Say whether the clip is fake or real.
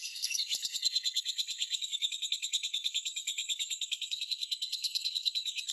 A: fake